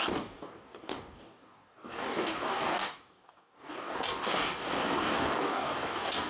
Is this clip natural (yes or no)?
no